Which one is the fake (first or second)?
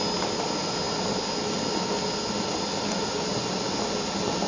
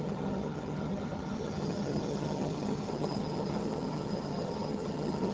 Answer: second